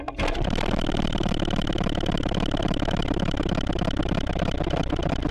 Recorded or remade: recorded